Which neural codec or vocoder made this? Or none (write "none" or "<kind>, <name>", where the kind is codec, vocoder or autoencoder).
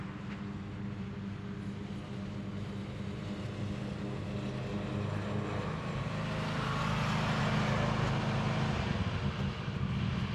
none